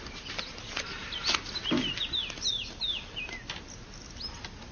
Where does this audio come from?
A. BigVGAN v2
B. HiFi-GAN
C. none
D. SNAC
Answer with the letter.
C